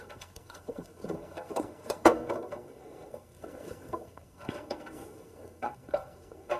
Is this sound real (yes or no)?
no